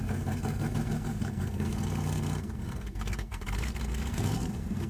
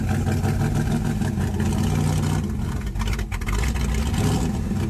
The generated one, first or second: first